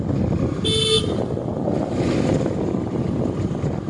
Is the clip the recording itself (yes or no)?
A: yes